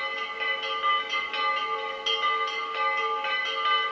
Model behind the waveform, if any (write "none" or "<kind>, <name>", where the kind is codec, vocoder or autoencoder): none